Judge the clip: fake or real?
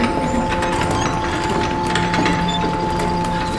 real